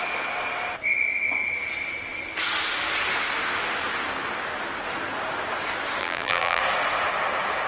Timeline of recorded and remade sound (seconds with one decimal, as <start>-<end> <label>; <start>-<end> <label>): 0.0-6.0 recorded; 6.0-6.6 remade; 6.6-7.7 recorded